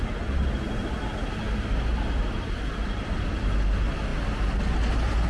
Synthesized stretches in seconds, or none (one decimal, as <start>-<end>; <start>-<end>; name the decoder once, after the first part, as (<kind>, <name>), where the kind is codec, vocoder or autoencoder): none